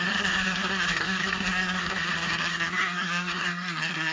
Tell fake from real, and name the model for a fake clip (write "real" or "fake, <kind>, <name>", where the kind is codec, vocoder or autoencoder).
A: fake, codec, SNAC